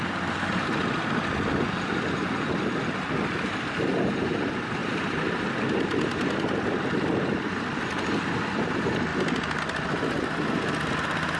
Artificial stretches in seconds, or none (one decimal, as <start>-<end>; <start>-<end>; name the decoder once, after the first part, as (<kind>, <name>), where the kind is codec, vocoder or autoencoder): 4.8-6.7 (vocoder, BigVGAN v2); 9.1-9.6